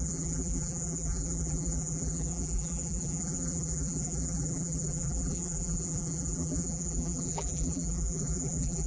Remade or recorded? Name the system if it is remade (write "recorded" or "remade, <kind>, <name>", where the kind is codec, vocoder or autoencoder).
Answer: remade, vocoder, BigVGAN v2